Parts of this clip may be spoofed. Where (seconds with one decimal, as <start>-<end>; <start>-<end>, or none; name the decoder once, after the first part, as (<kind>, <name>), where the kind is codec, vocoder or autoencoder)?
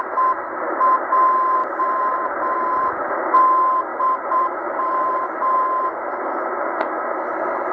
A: 1.6-3.1 (vocoder, BigVGAN v2); 3.9-6.1